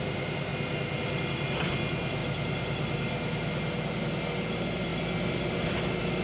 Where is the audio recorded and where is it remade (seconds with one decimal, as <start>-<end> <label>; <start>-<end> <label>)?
0.0-6.2 recorded